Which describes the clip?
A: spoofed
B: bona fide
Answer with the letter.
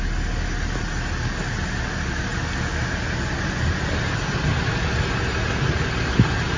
B